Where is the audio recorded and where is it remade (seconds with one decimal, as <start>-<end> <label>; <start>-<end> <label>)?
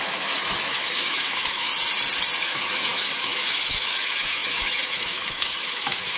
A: 0.0-1.7 remade; 1.7-2.4 recorded; 2.4-6.2 remade